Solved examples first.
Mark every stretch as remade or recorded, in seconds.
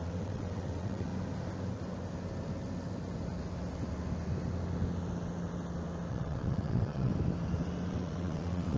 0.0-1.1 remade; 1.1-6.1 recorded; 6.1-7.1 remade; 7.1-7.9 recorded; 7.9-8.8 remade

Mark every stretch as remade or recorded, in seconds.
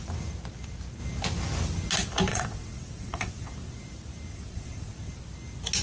0.0-2.3 recorded; 2.3-3.5 remade; 3.5-4.3 recorded; 4.3-5.1 remade; 5.1-5.8 recorded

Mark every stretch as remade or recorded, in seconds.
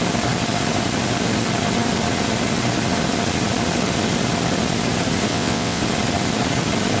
0.0-5.3 recorded; 5.3-5.8 remade; 5.8-7.0 recorded